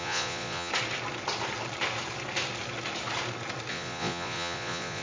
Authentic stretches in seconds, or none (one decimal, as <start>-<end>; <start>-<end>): 0.7-3.7